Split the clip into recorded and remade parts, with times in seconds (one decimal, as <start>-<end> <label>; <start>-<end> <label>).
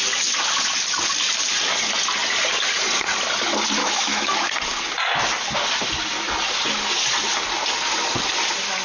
0.0-3.8 recorded; 3.8-4.5 remade; 4.5-8.8 recorded